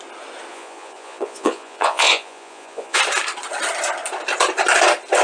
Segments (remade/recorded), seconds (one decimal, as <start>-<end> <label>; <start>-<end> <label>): 0.0-0.5 recorded; 0.5-3.0 remade; 3.0-5.2 recorded